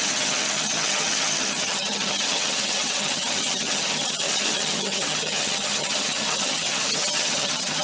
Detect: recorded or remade remade